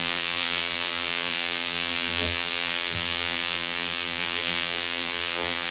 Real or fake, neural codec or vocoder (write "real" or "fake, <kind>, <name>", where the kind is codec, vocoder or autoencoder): fake, vocoder, BigVGAN v2